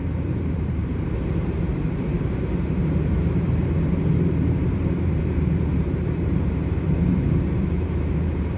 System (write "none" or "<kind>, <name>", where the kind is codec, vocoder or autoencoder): vocoder, BigVGAN v2